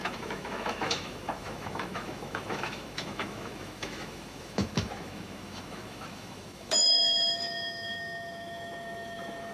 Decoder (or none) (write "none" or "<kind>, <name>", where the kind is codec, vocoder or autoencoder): autoencoder, DAC-VAE